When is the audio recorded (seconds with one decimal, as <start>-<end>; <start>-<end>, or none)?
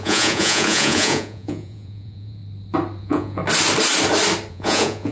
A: 2.4-3.0; 3.4-4.5